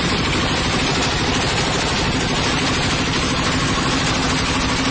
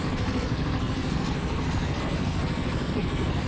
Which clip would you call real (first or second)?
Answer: first